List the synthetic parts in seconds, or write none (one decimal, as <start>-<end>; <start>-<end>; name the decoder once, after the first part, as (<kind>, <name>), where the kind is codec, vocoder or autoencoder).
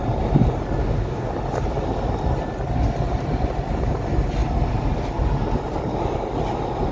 0.8-1.3 (codec, DAC)